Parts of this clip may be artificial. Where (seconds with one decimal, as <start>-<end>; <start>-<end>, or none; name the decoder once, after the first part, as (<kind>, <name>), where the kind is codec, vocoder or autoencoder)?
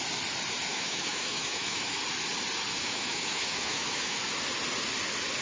0.7-2.0 (autoencoder, DAC-VAE); 2.8-4.2